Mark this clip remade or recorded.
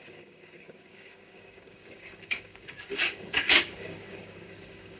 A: remade